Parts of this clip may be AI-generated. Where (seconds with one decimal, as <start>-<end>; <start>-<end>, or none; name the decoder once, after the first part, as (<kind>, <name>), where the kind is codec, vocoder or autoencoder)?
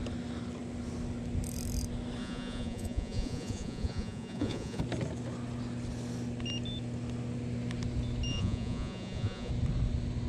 2.2-4.8 (vocoder, Vocos); 8.3-9.5